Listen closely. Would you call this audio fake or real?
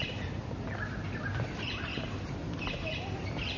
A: real